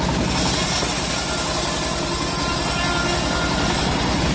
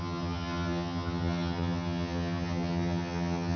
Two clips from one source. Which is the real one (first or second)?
first